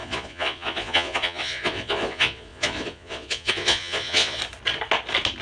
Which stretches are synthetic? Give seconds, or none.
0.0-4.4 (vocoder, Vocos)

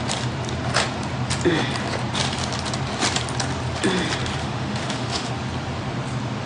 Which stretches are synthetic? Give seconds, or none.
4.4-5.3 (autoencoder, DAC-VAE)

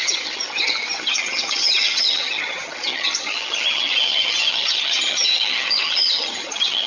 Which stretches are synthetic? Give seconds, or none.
0.0-6.9 (vocoder, HiFi-GAN)